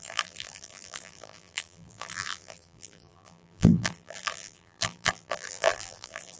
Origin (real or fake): fake